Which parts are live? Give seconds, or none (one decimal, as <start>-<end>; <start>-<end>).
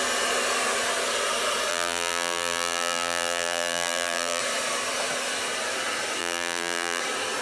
0.0-1.7; 4.4-6.2; 7.0-7.4